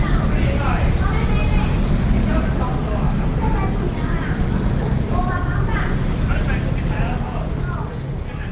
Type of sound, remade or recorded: recorded